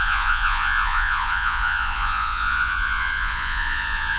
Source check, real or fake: fake